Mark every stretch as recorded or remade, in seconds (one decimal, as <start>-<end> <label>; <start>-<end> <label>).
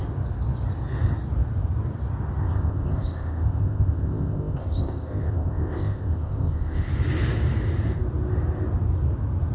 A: 0.0-2.4 recorded; 2.4-6.9 remade; 6.9-9.5 recorded